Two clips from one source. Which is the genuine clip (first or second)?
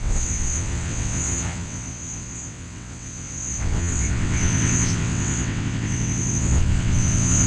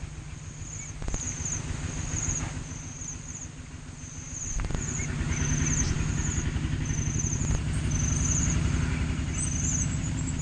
second